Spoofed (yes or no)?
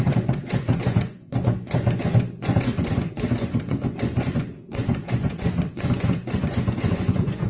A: yes